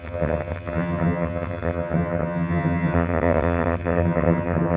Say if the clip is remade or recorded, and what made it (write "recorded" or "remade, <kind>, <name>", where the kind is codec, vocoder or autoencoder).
remade, vocoder, HiFi-GAN